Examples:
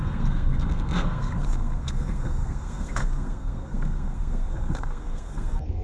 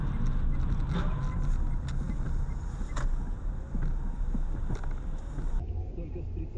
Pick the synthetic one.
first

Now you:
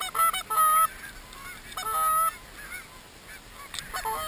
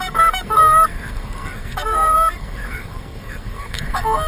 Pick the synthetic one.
second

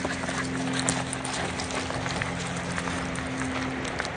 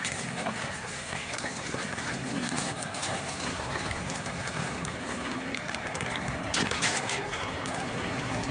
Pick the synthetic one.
second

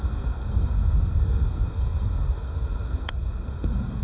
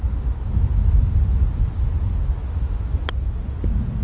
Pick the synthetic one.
first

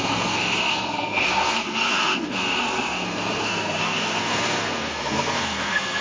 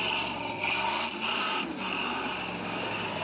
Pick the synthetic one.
first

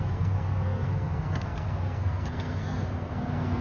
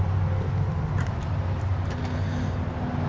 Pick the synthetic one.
first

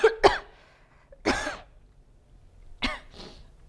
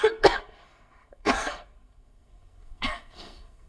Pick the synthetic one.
second